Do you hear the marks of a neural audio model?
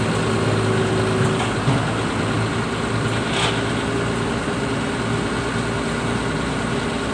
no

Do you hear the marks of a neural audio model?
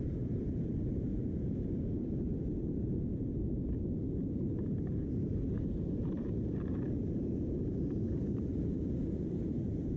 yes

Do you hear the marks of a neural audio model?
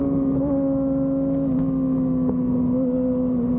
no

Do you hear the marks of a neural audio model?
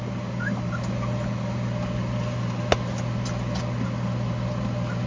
no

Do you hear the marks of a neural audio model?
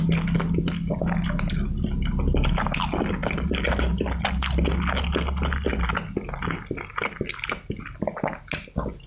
no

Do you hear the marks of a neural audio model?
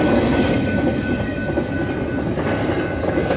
no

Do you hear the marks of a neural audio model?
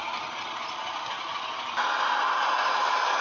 no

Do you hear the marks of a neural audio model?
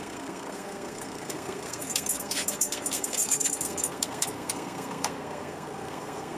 yes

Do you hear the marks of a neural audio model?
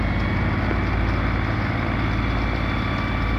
no